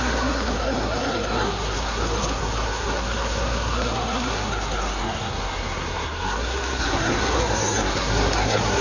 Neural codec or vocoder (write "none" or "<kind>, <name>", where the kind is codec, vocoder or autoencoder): codec, SNAC